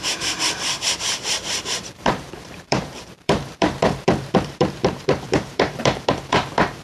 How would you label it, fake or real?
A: fake